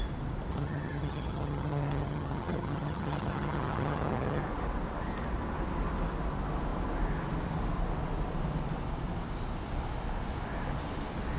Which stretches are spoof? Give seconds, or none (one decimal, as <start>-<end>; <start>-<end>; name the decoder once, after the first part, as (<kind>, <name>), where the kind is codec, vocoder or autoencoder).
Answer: 0.5-4.4 (vocoder, HiFi-GAN)